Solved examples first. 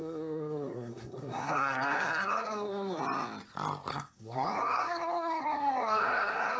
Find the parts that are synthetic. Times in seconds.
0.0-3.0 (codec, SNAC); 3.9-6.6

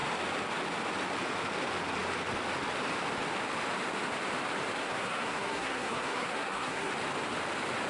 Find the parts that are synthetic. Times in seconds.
4.8-6.9 (codec, SNAC)